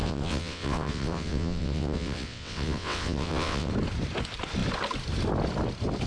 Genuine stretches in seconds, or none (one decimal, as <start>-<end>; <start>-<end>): 3.7-6.1